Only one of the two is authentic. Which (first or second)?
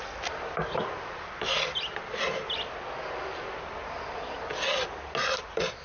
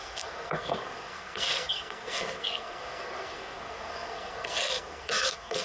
first